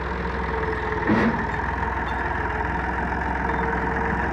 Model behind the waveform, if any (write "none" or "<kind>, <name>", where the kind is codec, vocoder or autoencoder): none